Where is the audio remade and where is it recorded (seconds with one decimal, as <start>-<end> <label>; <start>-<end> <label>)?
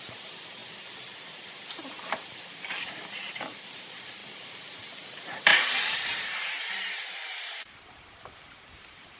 0.0-9.2 remade